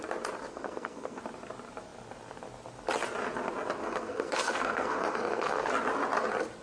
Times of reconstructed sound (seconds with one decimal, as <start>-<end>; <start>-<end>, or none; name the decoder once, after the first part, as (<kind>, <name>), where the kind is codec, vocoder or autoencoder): 0.5-1.2 (codec, SNAC); 3.8-5.7